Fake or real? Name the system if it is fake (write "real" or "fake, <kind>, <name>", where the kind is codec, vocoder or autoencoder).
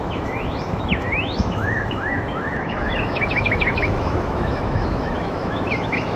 fake, autoencoder, DAC-VAE